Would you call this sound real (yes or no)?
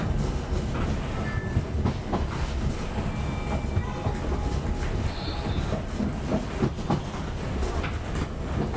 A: yes